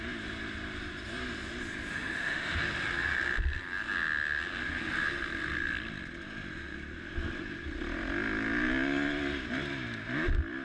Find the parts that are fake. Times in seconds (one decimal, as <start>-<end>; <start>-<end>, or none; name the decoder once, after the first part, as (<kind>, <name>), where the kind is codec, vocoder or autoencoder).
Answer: 1.9-2.6 (autoencoder, DAC-VAE)

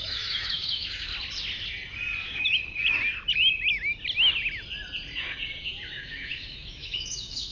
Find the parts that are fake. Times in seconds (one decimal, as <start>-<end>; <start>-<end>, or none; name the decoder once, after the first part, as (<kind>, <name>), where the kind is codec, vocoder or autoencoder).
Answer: 0.0-1.1 (autoencoder, DAC-VAE); 5.6-7.5